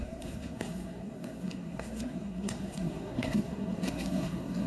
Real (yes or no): no